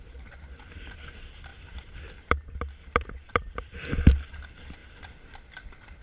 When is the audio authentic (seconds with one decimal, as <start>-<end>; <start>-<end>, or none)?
0.0-1.5; 3.8-4.8; 5.4-6.0